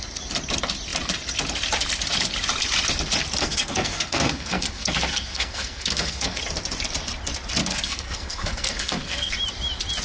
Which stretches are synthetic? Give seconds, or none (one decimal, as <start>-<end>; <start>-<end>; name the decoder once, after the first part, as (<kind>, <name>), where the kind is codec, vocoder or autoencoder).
3.4-6.4 (codec, SNAC); 7.6-9.3